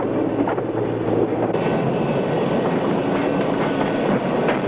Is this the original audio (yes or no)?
yes